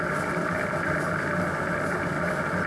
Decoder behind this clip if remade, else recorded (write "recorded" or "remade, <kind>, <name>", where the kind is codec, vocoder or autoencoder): recorded